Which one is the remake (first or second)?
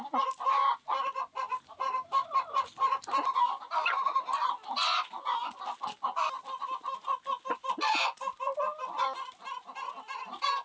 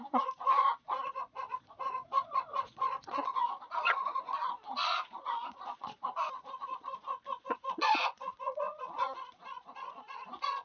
second